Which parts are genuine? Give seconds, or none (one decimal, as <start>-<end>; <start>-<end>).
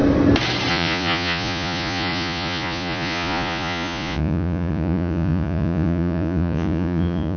0.0-0.7